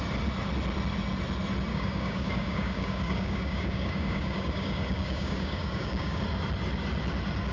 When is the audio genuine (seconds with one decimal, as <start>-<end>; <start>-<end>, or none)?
0.0-1.7; 6.2-7.5